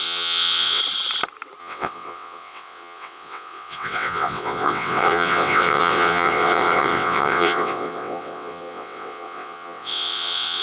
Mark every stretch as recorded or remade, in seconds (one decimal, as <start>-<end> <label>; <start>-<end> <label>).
0.0-0.8 remade; 0.8-1.6 recorded; 1.6-10.6 remade